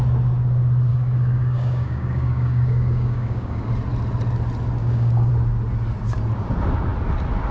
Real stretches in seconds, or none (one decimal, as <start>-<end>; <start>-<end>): 0.0-0.9; 3.7-4.8; 5.3-7.5